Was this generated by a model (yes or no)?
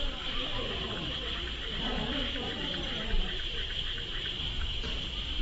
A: yes